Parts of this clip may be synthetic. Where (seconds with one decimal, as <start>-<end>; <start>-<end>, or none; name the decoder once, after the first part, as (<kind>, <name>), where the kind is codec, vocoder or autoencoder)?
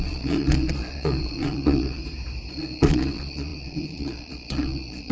0.0-2.0 (vocoder, Vocos); 2.5-5.1